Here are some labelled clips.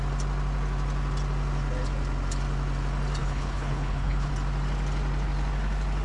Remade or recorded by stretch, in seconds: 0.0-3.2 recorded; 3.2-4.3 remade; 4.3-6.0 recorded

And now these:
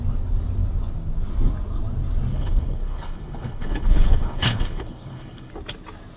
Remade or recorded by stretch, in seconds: 0.0-2.3 recorded; 2.3-5.5 remade; 5.5-6.2 recorded

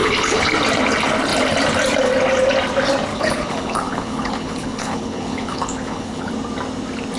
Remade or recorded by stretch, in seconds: 0.0-0.5 remade; 0.5-3.1 recorded; 3.1-6.3 remade; 6.3-7.2 recorded

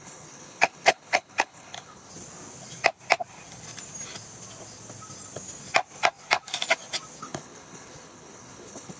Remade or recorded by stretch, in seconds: 0.0-2.1 remade; 2.1-7.2 recorded; 7.2-9.0 remade